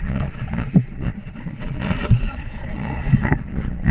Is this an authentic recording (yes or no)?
no